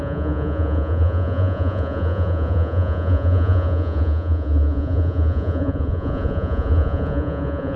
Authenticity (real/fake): fake